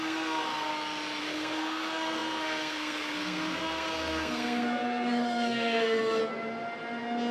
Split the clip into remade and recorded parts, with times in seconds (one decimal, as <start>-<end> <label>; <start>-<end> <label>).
0.0-0.7 remade; 0.7-1.2 recorded; 1.2-6.2 remade; 6.2-7.3 recorded